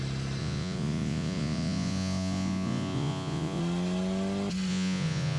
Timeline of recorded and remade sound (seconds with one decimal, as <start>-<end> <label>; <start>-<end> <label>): 0.0-0.4 recorded; 0.4-3.6 remade; 3.6-4.7 recorded; 4.7-5.4 remade